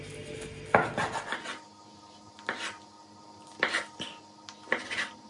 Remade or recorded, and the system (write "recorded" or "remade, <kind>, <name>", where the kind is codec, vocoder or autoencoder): recorded